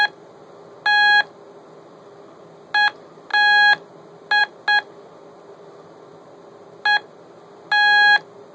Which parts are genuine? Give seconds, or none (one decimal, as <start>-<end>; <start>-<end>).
0.0-8.5